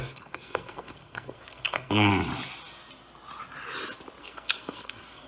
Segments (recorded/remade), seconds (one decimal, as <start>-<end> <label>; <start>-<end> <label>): 0.0-2.1 remade; 2.1-4.2 recorded; 4.2-5.3 remade